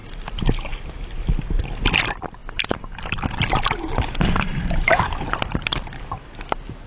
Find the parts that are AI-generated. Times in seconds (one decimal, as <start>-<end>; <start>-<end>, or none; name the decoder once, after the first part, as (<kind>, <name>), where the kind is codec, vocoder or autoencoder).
none